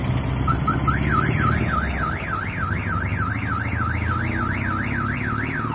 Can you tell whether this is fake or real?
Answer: real